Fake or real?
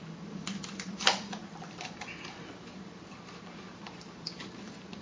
fake